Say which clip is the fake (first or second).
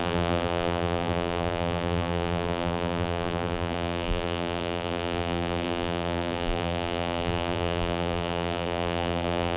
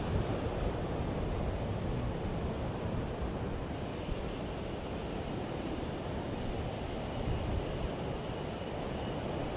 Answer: first